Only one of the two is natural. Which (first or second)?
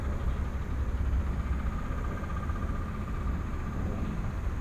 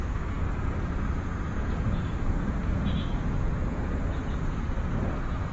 first